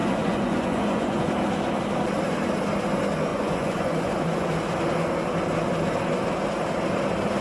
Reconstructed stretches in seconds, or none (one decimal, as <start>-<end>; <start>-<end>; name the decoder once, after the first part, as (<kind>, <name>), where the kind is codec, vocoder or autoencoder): 0.0-1.3 (vocoder, Vocos); 3.3-4.5